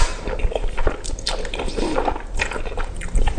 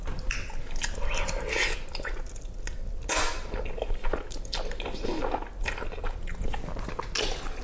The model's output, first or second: first